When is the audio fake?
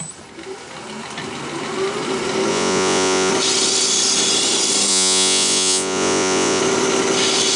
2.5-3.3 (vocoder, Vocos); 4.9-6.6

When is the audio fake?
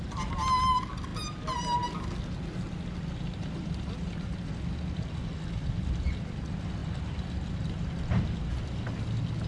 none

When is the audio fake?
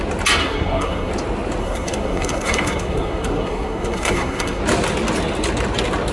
0.4-1.1 (codec, SNAC); 1.6-4.6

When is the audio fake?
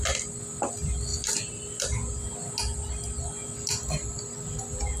none